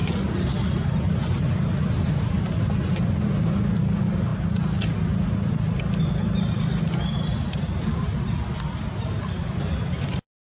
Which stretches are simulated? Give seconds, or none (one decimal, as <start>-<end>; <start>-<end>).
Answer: none